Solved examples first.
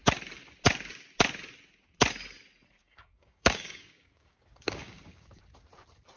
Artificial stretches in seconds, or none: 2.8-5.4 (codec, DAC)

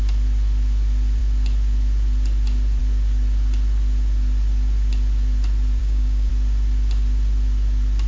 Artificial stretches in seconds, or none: 5.8-6.3 (codec, DAC)

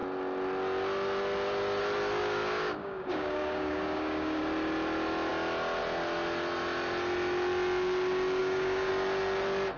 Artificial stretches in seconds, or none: 2.2-4.4 (codec, DAC); 8.4-8.9